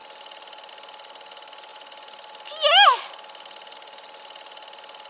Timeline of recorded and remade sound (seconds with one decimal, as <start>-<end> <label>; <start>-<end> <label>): 0.0-5.1 recorded